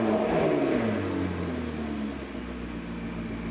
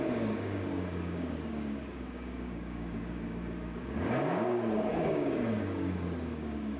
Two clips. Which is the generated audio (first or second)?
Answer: second